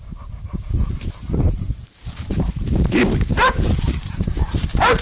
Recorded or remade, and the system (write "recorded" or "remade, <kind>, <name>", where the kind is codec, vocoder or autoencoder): remade, vocoder, BigVGAN v2